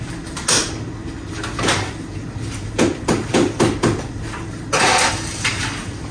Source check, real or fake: real